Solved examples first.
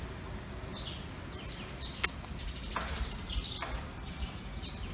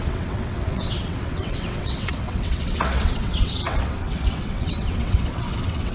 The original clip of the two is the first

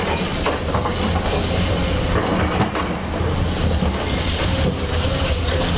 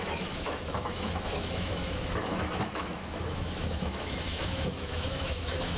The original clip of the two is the first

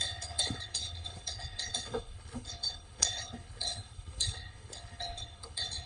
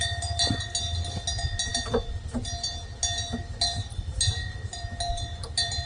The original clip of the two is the second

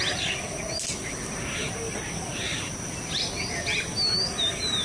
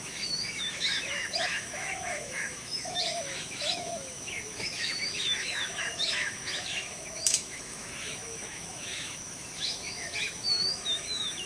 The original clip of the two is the first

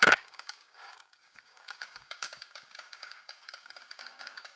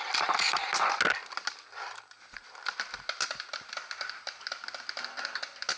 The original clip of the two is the second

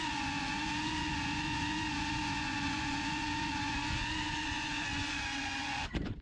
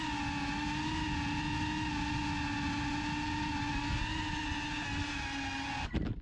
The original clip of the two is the second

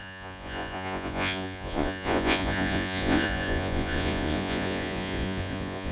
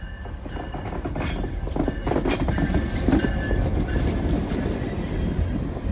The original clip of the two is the second